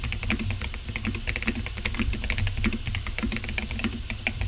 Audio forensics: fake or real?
real